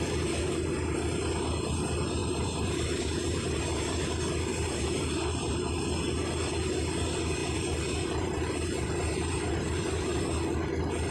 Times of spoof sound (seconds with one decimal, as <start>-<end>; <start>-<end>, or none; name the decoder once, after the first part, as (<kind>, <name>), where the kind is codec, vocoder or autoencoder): 2.2-4.1 (vocoder, BigVGAN v2); 4.5-5.7; 7.4-10.2